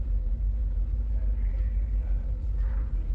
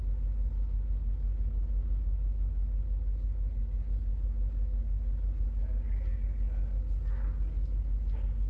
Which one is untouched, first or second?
second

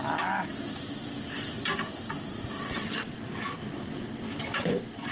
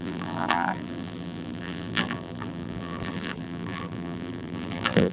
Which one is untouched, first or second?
first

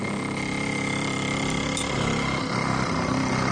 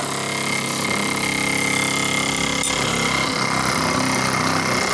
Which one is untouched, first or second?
second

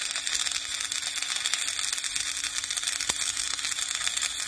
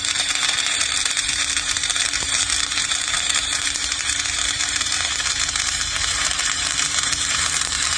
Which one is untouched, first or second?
first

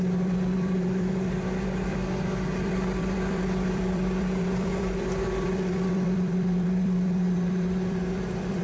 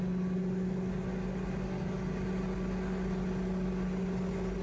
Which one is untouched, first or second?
second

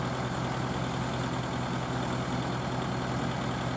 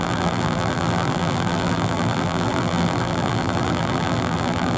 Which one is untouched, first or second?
first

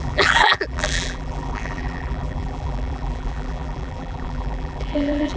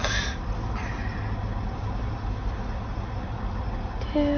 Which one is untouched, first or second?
second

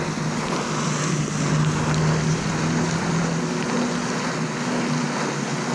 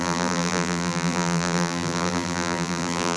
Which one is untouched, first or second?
first